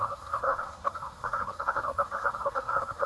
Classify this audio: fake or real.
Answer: fake